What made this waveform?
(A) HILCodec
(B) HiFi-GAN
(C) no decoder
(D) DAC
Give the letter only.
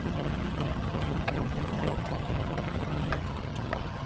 B